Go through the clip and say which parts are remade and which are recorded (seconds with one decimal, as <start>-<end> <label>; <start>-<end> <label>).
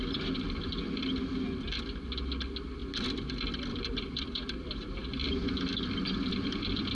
0.0-3.7 recorded; 3.7-6.9 remade